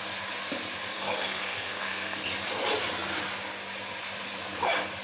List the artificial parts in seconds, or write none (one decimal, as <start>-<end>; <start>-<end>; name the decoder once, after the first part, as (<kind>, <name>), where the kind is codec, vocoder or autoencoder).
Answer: 0.9-2.2 (codec, SNAC)